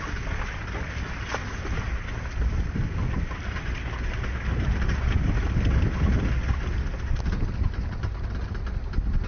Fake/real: real